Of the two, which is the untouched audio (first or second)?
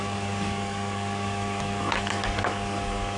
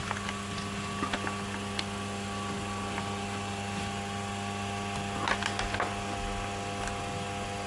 second